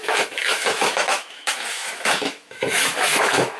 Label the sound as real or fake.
fake